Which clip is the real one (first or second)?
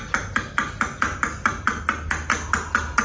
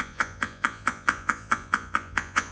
first